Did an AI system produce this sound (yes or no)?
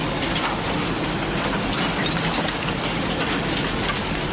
no